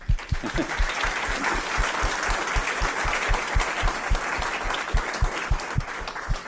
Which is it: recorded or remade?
recorded